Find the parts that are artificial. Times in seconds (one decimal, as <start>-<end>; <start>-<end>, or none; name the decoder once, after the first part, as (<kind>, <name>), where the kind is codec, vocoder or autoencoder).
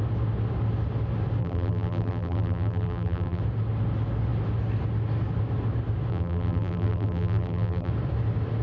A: 1.4-3.4 (vocoder, BigVGAN v2); 6.1-7.9